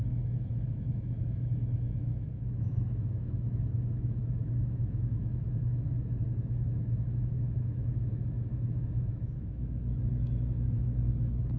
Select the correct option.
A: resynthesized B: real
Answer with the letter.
A